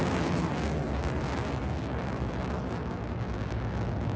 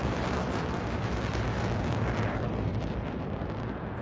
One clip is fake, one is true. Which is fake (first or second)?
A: second